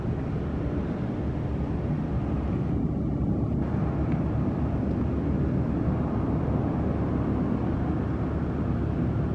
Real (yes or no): yes